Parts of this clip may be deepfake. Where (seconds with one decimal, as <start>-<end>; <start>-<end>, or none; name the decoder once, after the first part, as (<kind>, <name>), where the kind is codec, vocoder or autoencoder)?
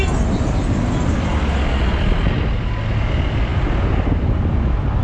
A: none